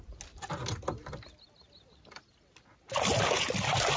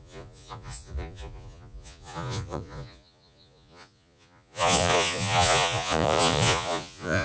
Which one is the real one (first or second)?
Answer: first